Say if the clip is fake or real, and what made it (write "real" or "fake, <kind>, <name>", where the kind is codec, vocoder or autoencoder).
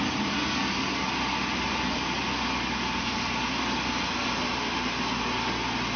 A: real